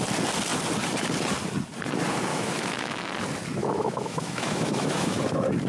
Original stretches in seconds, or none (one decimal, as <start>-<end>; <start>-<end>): 0.0-2.3; 3.1-3.6; 5.2-5.7

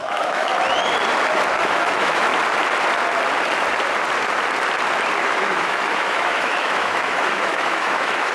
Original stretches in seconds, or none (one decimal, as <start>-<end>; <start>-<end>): 0.5-1.6; 2.3-5.2